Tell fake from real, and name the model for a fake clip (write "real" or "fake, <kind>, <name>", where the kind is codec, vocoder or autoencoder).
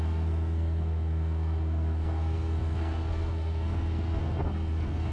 fake, codec, SNAC